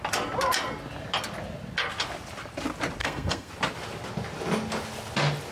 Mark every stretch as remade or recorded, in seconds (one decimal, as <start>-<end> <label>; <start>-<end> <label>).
0.0-3.0 recorded; 3.0-3.5 remade; 3.5-5.5 recorded